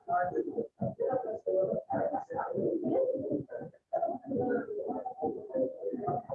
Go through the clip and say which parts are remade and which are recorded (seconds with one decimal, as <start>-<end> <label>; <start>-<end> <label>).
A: 0.0-6.3 recorded